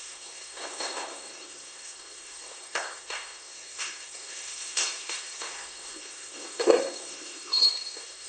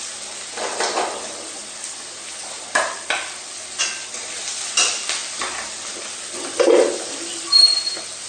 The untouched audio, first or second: second